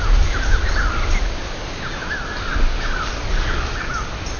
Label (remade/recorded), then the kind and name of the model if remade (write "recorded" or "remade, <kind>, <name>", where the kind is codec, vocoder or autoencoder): recorded